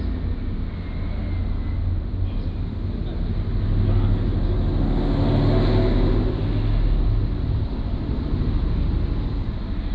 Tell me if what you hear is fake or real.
real